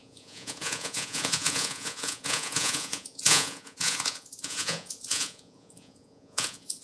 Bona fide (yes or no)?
no